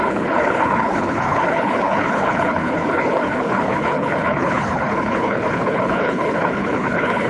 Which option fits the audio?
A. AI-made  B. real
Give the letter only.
A